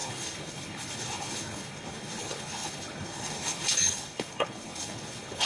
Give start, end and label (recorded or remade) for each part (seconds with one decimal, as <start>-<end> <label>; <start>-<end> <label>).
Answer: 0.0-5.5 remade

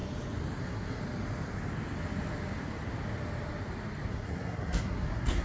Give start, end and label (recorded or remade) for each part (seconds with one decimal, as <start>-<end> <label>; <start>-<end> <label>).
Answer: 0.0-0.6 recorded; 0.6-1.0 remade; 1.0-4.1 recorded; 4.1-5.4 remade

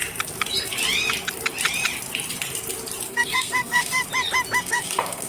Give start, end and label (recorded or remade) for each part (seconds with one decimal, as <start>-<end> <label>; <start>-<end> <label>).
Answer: 0.0-3.1 recorded; 3.1-4.0 remade; 4.0-4.6 recorded; 4.6-5.3 remade